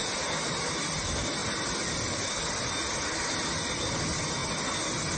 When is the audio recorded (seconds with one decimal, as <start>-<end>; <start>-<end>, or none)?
0.0-5.2